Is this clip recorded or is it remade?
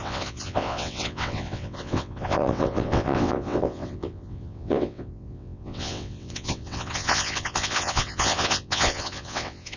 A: remade